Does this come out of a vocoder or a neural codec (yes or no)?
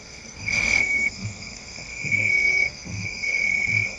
yes